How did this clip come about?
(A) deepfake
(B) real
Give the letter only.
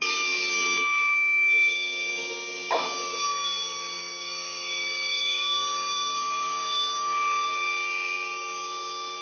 A